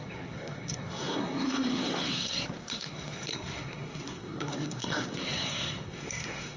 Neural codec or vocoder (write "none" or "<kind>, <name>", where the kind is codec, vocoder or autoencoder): codec, SNAC